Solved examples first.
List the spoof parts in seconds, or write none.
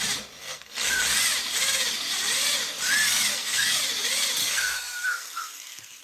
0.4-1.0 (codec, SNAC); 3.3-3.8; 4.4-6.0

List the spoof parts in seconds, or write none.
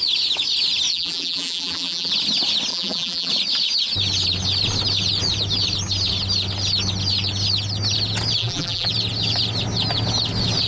0.9-2.1 (vocoder, BigVGAN v2); 2.7-3.3; 8.4-8.9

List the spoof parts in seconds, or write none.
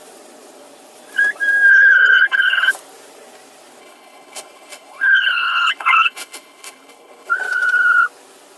1.7-2.7 (codec, HILCodec); 3.8-7.3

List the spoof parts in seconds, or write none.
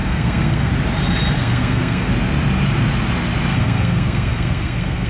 0.0-0.7 (codec, SNAC); 1.4-2.1; 3.5-5.1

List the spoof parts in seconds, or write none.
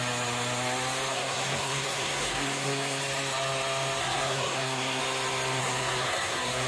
1.1-3.0 (codec, SNAC); 4.0-5.0; 5.6-6.7